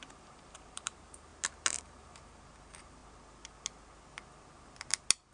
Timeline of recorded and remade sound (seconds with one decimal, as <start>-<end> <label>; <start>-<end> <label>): 0.0-1.3 remade; 1.3-1.8 recorded; 1.8-3.0 remade; 3.0-5.3 recorded